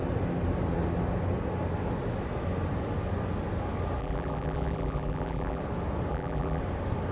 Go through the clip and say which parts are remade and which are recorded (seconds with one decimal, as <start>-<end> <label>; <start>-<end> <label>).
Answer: 0.0-4.0 recorded; 4.0-5.6 remade; 5.6-6.1 recorded; 6.1-6.6 remade; 6.6-7.1 recorded